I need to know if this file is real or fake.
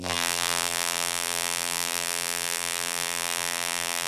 fake